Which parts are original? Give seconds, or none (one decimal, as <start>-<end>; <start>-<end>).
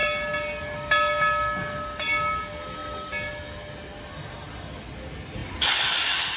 0.0-6.4